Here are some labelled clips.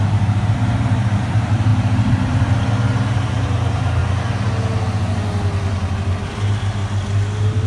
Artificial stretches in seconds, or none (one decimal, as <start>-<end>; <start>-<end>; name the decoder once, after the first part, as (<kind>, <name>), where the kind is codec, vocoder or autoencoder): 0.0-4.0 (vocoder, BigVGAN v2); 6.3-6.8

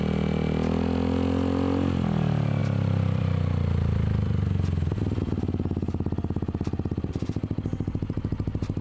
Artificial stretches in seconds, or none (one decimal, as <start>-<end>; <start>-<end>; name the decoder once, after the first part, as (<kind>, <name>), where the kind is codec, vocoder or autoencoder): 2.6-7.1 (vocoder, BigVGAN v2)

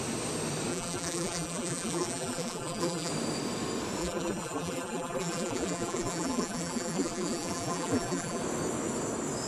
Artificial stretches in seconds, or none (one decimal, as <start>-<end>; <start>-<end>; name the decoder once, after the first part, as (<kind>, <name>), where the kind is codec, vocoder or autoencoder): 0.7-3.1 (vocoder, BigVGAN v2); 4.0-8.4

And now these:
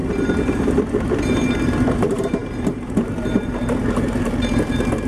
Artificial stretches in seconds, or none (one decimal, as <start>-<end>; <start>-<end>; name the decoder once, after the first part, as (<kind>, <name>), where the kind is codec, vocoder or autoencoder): 0.0-5.1 (vocoder, BigVGAN v2)

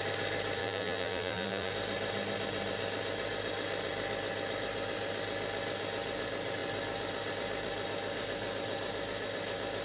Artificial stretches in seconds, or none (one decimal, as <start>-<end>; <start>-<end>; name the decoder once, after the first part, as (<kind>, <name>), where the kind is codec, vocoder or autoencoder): 0.6-1.7 (vocoder, BigVGAN v2)

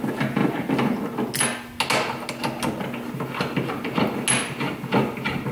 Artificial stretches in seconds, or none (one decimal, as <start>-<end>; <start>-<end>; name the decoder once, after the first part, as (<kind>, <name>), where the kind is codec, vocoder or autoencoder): none